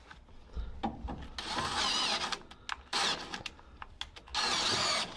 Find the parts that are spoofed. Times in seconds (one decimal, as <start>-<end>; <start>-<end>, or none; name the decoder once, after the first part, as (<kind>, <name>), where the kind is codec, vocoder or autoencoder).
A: none